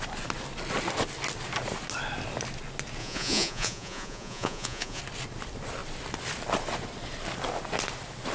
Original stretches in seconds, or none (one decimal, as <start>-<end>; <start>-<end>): 0.0-3.0; 5.0-8.3